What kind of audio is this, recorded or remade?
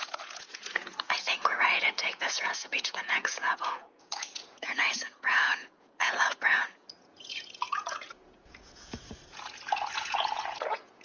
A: remade